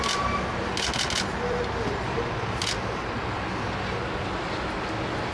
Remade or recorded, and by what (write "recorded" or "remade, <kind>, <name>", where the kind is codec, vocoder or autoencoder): recorded